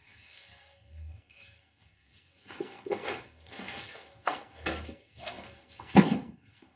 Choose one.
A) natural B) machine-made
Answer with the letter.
B